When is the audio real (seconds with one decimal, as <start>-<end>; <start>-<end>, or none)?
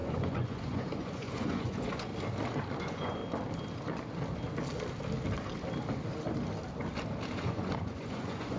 2.1-2.8; 3.2-7.4